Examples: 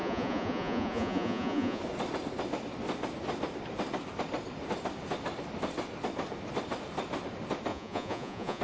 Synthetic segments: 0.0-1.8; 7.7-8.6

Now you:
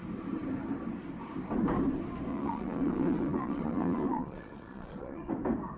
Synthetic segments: 2.3-5.3

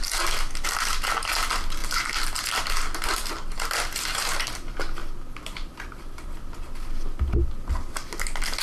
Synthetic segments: none

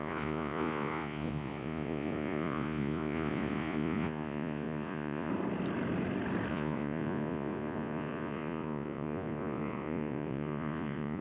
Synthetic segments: 0.0-5.3; 6.5-11.2